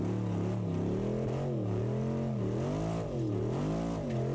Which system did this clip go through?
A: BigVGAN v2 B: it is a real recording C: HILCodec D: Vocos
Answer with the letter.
B